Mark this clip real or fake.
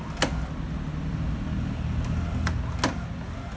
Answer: real